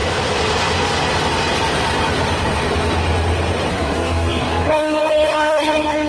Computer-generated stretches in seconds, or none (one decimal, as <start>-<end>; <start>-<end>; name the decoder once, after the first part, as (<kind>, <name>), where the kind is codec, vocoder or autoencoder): 3.7-6.1 (codec, SNAC)